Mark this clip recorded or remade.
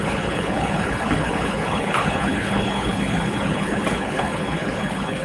remade